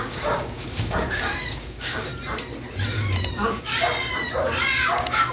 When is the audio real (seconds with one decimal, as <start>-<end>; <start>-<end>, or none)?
2.1-3.3; 3.7-5.3